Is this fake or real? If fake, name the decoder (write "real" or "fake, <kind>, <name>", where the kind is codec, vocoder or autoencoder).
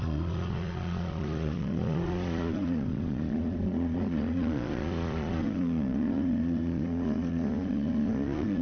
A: fake, vocoder, Vocos